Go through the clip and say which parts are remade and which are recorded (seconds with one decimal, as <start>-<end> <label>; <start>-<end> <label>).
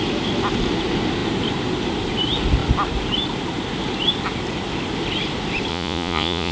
0.0-5.7 recorded; 5.7-6.5 remade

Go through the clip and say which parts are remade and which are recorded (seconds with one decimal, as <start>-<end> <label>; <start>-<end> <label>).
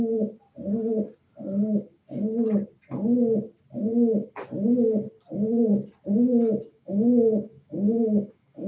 0.0-6.7 recorded; 6.7-8.7 remade